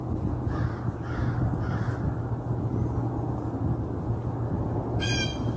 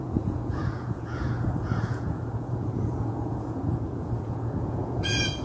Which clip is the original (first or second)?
first